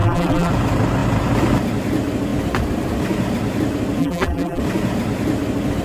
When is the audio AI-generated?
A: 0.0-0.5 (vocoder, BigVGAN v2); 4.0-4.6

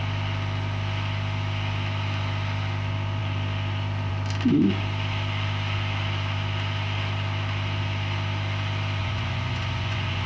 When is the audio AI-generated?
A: 9.0-10.3 (vocoder, Vocos)